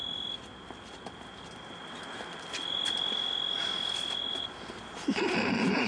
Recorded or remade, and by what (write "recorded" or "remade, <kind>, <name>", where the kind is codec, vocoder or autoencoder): remade, vocoder, BigVGAN v2